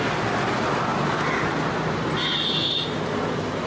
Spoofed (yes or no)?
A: no